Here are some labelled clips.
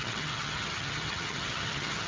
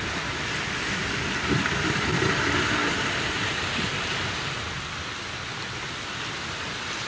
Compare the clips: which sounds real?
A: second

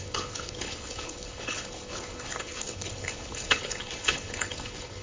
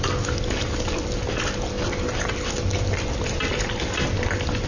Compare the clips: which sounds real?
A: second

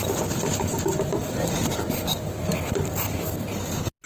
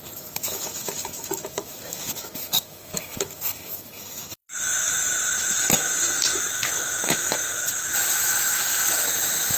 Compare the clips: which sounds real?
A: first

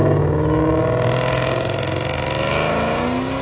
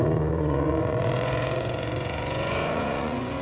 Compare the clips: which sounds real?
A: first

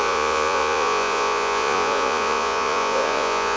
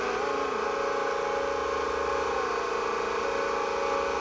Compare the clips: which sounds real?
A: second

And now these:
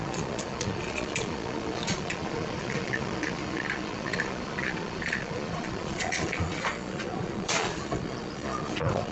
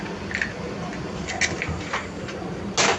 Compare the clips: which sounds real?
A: second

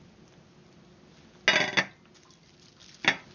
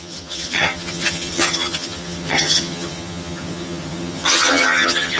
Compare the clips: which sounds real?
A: first